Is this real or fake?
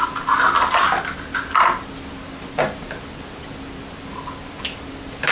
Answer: real